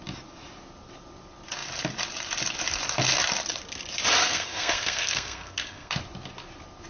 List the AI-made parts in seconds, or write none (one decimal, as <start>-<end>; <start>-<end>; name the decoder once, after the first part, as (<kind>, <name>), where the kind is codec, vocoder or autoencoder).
4.2-6.0 (codec, SNAC)